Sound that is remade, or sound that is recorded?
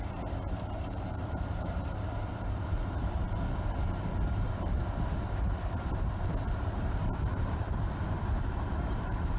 remade